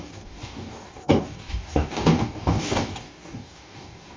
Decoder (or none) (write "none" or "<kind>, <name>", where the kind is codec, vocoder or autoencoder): codec, DAC